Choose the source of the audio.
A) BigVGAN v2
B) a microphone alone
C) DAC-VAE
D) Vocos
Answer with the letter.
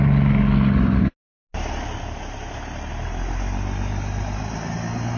B